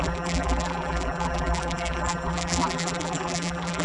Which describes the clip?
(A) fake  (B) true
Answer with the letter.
A